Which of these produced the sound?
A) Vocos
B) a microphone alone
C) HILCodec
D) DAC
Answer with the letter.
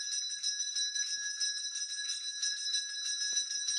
B